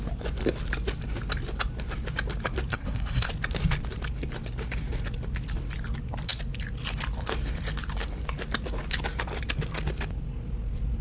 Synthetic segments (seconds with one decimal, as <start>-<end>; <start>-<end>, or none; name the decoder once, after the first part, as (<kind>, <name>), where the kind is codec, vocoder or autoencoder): 2.7-3.3 (codec, SNAC)